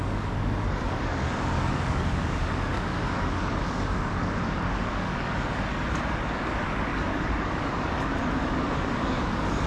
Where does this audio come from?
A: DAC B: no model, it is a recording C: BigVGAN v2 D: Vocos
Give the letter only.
A